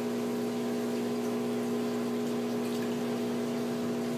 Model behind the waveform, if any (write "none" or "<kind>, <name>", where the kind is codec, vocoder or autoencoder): none